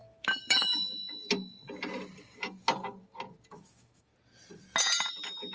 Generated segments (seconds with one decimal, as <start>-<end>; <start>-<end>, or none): 0.0-1.0; 3.5-4.1; 5.1-5.5